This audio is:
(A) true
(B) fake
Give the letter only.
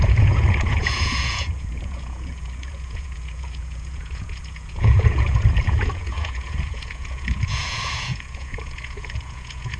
B